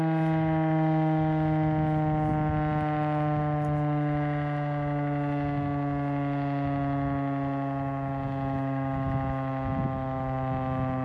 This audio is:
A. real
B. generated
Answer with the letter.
A